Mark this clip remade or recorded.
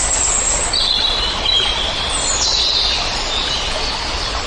recorded